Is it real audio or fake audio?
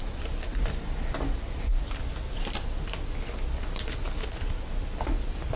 real